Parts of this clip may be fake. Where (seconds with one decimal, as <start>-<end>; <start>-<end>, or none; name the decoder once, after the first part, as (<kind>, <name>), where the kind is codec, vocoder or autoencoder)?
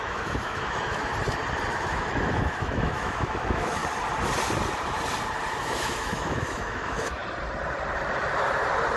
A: 0.0-1.1 (autoencoder, DAC-VAE); 1.7-3.8; 5.6-7.2